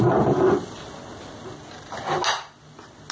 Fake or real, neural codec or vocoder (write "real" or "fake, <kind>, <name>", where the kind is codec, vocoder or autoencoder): real